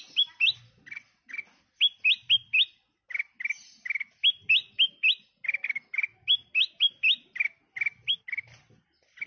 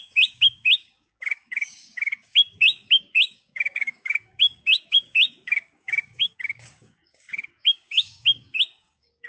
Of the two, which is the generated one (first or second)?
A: second